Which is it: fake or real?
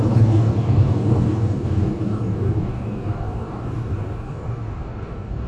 fake